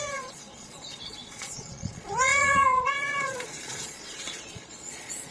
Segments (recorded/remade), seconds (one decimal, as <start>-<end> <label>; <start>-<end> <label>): 0.0-5.3 remade